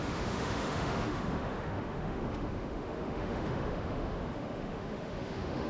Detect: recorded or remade remade